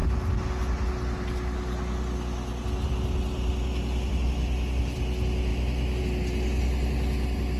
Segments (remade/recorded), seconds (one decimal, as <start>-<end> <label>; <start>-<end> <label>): 0.0-7.6 recorded

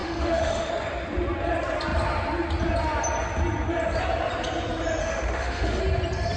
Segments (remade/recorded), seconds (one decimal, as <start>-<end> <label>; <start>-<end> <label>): 0.0-0.7 remade; 0.7-5.0 recorded; 5.0-5.8 remade; 5.8-6.4 recorded